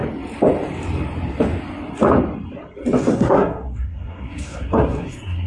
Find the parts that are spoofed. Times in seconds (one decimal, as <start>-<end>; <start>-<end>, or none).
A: 3.1-5.5